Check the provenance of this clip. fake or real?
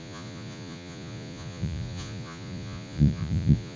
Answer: fake